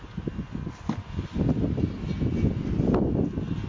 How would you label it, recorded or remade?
recorded